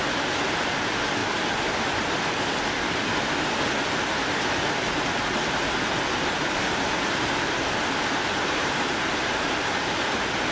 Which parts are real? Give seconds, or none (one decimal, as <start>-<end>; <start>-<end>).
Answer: 0.0-5.4; 9.4-10.5